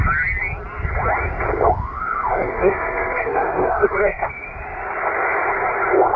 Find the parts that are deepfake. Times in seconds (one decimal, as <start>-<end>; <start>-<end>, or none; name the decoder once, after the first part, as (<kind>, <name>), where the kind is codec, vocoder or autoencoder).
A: 2.3-4.3 (codec, SNAC)